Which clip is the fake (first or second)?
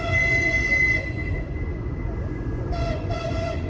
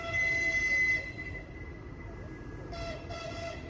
first